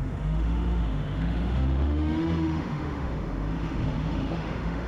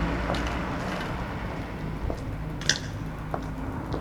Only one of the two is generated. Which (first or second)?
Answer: first